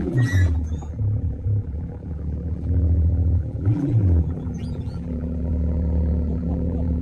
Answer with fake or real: fake